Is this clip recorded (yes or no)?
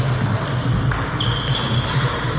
yes